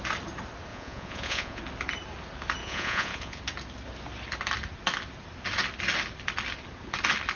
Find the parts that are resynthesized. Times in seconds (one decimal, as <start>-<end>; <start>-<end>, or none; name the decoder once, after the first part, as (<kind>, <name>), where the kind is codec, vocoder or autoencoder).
0.7-1.6 (vocoder, Vocos); 2.6-3.4